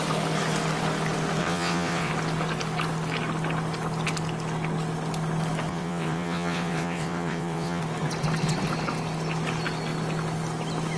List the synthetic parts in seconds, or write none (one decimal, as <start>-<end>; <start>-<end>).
1.4-2.1; 5.7-7.8